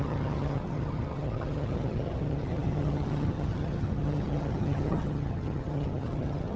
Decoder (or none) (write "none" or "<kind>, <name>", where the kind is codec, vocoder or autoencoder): vocoder, HiFi-GAN